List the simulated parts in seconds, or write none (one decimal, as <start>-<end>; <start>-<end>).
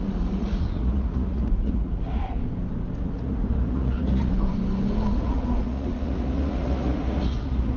0.0-2.4; 3.0-4.3; 5.1-7.8